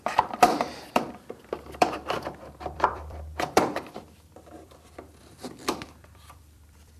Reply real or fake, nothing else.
fake